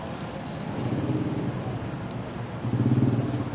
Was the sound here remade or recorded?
recorded